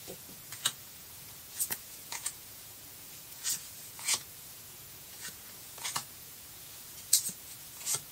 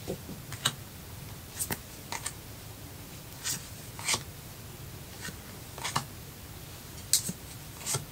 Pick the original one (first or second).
second